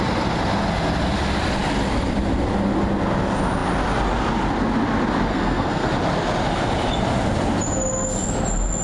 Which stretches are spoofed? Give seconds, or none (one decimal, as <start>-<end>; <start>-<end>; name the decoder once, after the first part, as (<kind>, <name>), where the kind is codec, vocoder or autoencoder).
5.3-5.9 (codec, SNAC)